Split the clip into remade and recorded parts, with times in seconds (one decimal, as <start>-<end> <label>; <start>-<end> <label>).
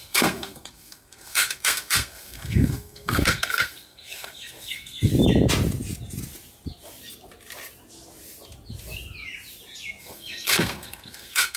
0.0-5.1 remade; 5.1-10.0 recorded; 10.0-11.6 remade